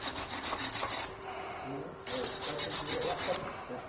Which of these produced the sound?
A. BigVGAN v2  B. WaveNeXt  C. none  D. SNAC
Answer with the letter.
C